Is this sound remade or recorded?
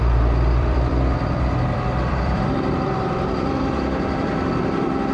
remade